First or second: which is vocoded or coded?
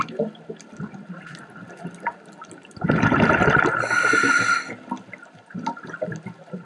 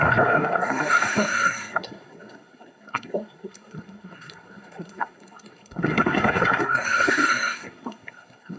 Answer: second